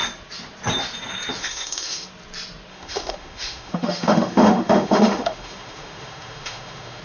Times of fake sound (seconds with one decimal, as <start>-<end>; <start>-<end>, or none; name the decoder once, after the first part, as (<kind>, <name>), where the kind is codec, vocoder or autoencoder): 1.4-2.1 (autoencoder, DAC-VAE); 2.7-7.0